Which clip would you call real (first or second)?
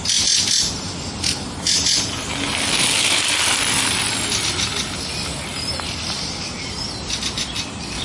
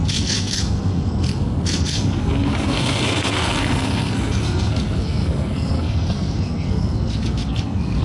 first